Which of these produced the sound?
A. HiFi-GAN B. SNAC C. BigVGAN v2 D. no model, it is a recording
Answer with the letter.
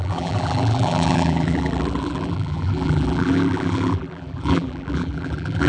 C